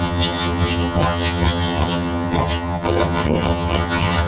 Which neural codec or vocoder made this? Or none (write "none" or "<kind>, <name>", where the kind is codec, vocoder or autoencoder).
vocoder, HiFi-GAN